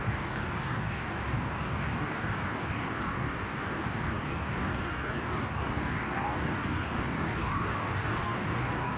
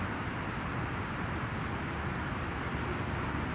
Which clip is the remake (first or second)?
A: first